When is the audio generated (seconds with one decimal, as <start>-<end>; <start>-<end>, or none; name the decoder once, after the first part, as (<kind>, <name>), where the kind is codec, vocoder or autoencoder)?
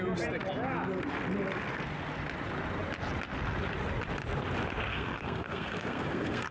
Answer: 4.9-6.5 (codec, SNAC)